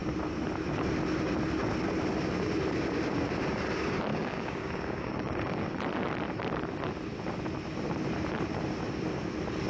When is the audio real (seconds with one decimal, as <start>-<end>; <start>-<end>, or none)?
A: 0.0-4.1; 5.8-9.7